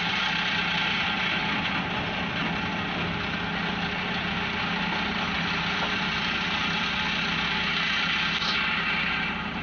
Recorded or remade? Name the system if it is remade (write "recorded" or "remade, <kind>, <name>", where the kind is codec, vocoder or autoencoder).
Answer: recorded